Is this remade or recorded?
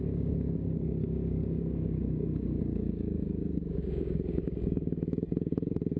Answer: remade